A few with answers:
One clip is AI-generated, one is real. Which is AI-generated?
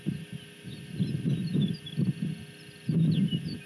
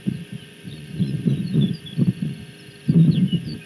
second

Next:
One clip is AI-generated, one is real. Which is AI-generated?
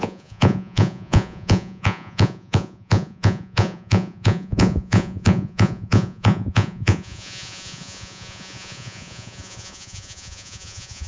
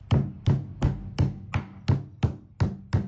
first